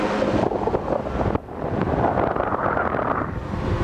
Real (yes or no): no